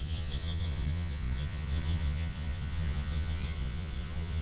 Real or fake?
fake